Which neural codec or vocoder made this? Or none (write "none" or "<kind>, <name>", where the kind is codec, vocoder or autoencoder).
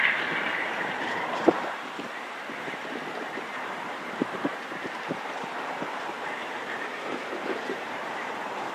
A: vocoder, BigVGAN v2